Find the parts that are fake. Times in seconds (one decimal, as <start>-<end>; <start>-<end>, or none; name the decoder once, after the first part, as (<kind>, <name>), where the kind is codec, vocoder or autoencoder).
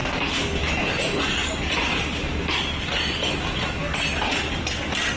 none